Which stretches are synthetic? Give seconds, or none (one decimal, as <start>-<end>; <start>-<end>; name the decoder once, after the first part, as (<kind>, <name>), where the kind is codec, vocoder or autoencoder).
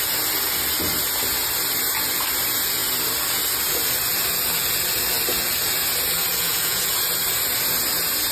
6.3-6.9 (vocoder, Vocos)